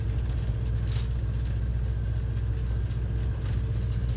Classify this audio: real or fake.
real